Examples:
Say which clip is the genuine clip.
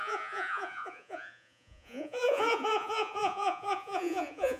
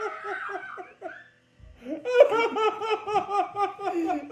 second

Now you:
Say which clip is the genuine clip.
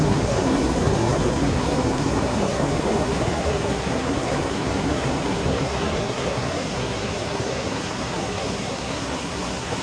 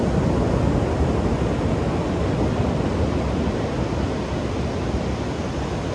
second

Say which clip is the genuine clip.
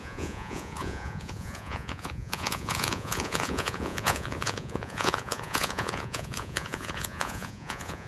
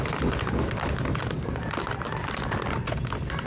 second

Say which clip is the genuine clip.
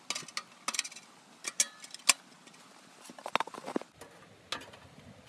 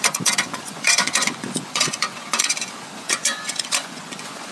first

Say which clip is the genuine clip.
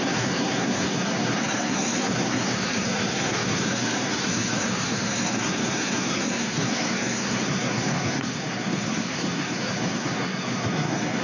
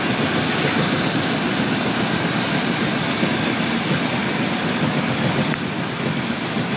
second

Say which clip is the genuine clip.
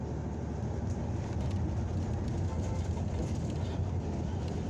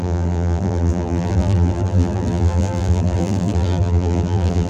first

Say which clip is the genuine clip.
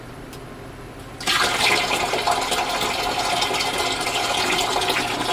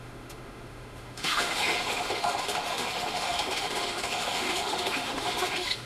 first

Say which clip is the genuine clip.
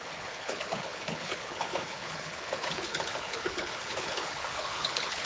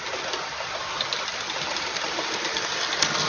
second